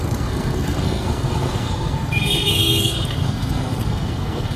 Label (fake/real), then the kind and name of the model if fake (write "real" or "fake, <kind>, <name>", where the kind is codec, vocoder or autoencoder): fake, codec, SNAC